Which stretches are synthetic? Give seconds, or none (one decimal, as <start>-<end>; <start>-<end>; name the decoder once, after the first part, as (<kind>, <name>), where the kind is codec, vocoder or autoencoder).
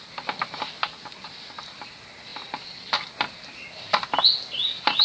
2.3-2.8 (vocoder, BigVGAN v2)